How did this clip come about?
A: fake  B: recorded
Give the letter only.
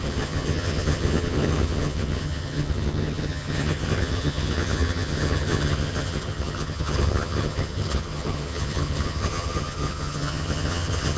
A